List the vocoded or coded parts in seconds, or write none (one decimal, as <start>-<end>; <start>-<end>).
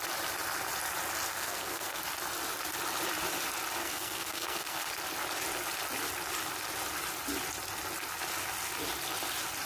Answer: 1.3-2.0; 3.8-4.9